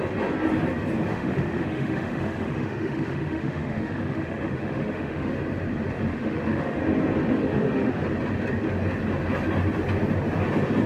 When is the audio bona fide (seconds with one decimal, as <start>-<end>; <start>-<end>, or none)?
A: 0.0-1.1; 5.3-6.1; 6.8-7.4; 7.9-10.9